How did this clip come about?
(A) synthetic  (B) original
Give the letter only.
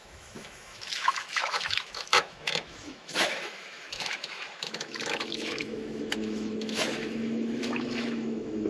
A